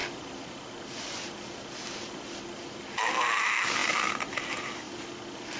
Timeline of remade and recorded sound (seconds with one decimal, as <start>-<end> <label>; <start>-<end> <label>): 0.0-5.6 recorded